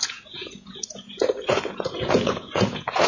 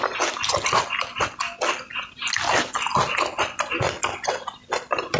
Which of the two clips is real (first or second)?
second